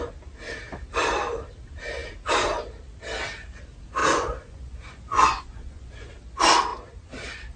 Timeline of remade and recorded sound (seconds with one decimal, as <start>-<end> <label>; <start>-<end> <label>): 0.0-4.0 recorded; 4.0-6.1 remade; 6.1-7.6 recorded